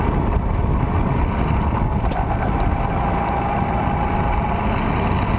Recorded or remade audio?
recorded